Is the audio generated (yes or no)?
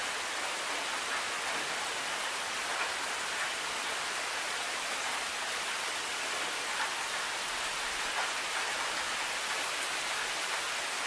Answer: no